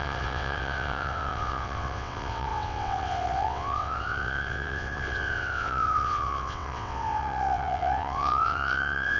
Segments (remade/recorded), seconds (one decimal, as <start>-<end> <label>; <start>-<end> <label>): 0.0-9.2 remade